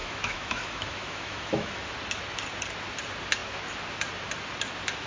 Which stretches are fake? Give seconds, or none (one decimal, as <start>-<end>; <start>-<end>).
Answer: 0.0-1.9